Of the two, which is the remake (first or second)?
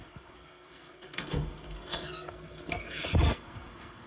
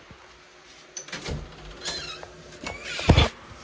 first